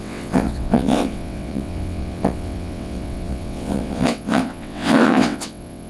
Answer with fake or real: fake